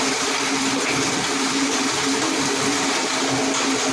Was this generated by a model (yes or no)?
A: no